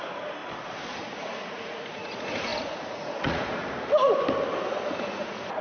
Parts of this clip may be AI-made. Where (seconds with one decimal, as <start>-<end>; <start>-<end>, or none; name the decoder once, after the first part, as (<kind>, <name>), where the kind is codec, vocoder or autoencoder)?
0.0-0.4 (vocoder, Vocos); 1.0-3.6; 4.7-5.6